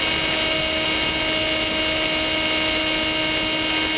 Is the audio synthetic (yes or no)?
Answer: no